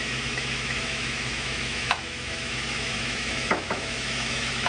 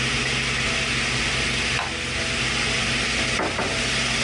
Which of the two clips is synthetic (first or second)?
first